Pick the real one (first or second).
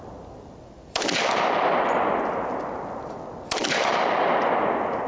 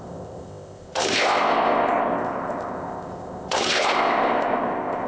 first